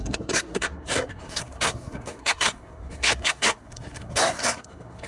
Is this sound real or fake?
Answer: fake